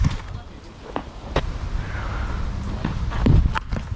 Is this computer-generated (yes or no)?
no